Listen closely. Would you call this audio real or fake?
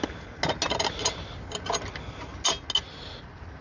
real